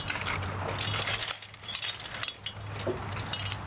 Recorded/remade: recorded